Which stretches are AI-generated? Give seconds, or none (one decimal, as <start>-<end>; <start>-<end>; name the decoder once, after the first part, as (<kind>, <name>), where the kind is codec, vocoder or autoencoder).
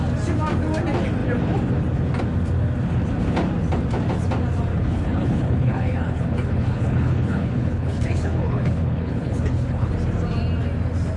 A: 4.7-9.9 (codec, HILCodec)